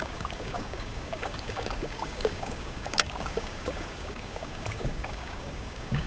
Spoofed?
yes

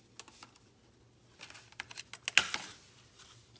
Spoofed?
no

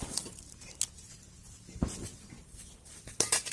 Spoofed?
no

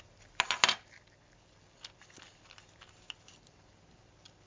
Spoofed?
no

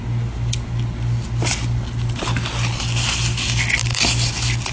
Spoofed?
no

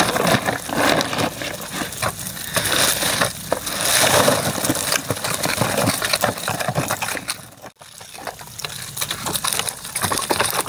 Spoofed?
no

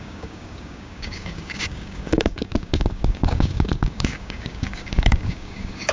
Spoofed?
yes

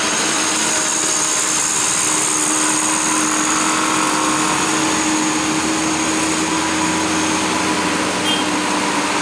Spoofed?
no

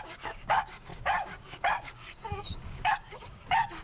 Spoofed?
yes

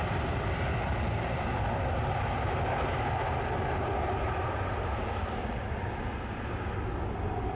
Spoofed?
no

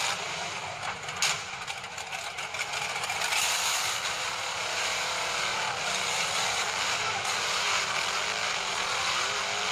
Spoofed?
no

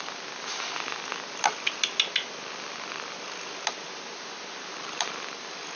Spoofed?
no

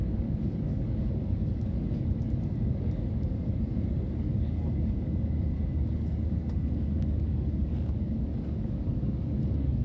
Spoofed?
yes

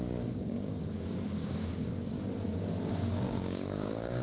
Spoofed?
yes